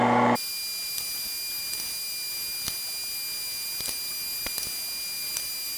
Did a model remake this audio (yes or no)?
no